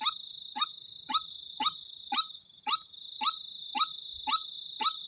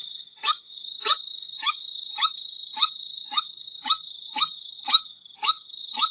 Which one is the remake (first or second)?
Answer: second